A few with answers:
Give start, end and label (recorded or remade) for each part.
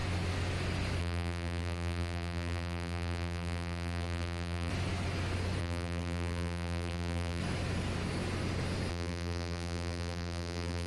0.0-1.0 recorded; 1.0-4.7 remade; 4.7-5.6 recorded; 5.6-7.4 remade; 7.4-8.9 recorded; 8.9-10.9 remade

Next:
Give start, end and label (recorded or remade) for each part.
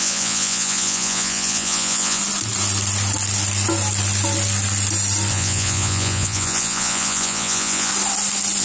0.0-2.2 remade; 2.2-5.3 recorded; 5.3-7.9 remade; 7.9-8.6 recorded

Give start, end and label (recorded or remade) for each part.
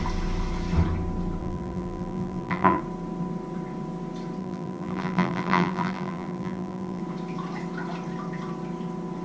0.0-1.4 recorded; 1.4-2.8 remade; 2.8-4.4 recorded; 4.4-7.0 remade; 7.0-9.2 recorded